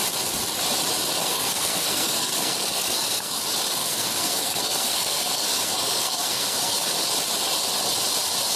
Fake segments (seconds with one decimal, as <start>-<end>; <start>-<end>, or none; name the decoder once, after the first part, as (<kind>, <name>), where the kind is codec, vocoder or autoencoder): 1.2-3.4 (codec, SNAC); 3.8-6.9